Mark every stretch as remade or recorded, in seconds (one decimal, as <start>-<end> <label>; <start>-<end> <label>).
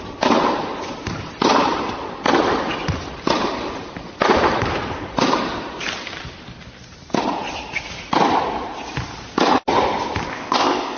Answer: 0.0-10.3 recorded; 10.3-11.0 remade